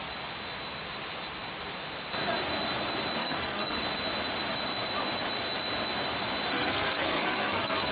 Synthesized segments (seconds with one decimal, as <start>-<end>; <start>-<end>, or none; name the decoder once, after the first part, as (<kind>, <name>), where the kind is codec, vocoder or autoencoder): 3.2-3.8 (codec, SNAC); 6.5-7.9

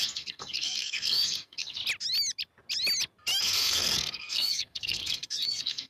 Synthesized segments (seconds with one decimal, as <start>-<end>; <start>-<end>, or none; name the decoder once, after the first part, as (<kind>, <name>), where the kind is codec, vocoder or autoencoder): 0.0-1.8 (codec, SNAC); 3.4-5.9

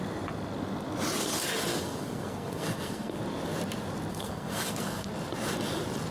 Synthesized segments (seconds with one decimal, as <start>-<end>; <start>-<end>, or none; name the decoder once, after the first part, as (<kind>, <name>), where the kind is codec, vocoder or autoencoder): 1.7-3.2 (codec, SNAC); 4.1-5.1